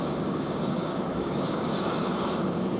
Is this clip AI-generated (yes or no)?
yes